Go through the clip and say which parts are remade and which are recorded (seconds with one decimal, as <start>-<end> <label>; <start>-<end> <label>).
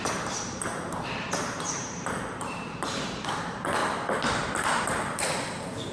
0.0-3.8 remade; 3.8-4.8 recorded; 4.8-5.9 remade